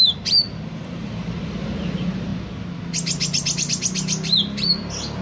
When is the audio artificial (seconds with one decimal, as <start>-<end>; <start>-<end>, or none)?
none